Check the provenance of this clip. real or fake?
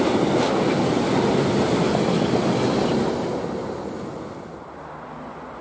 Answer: real